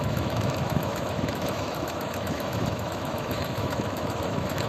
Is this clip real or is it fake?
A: fake